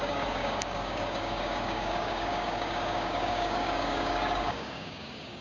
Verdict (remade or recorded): remade